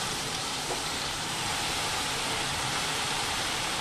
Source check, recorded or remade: remade